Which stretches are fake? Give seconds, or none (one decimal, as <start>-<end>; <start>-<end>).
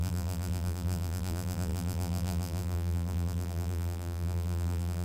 0.0-5.0